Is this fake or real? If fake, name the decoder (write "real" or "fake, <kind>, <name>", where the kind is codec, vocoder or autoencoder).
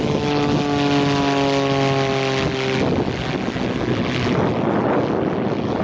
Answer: real